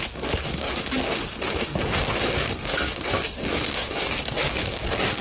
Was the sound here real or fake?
fake